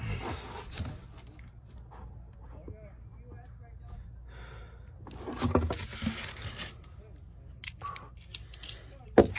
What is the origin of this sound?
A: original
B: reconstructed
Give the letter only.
A